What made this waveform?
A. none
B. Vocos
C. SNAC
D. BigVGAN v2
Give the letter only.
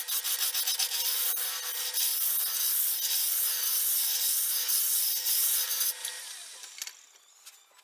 A